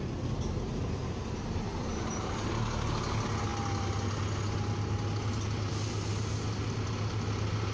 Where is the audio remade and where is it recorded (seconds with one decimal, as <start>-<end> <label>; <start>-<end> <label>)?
0.0-1.0 recorded; 1.0-2.5 remade; 2.5-7.7 recorded